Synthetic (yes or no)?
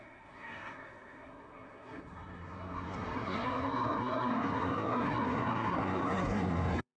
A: yes